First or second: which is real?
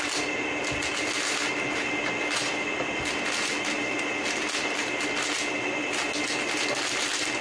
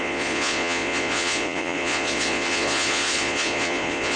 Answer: first